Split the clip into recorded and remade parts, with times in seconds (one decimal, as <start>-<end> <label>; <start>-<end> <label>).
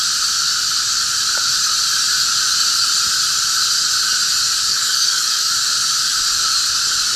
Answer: 0.0-4.7 recorded; 4.7-5.5 remade; 5.5-7.2 recorded